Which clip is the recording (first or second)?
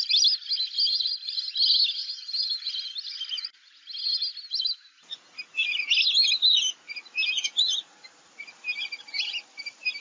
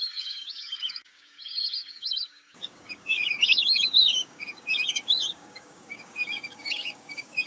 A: first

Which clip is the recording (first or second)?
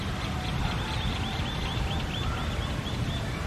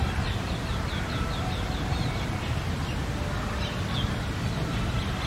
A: second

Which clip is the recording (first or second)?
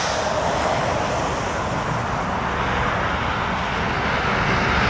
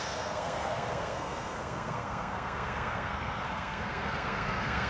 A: first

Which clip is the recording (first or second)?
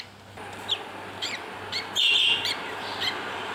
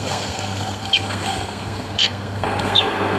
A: first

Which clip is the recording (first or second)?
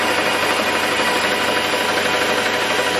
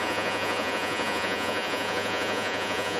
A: first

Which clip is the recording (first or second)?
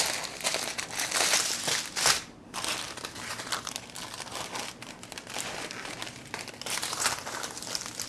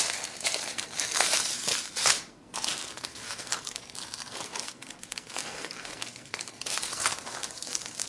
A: first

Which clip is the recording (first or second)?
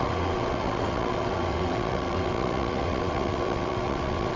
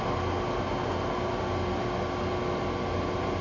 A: second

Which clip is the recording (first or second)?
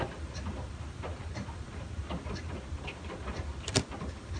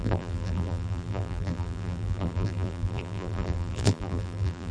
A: first